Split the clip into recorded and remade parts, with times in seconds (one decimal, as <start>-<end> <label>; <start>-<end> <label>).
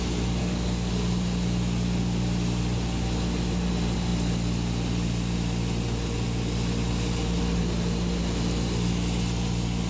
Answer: 0.0-0.4 recorded; 0.4-0.9 remade; 0.9-9.9 recorded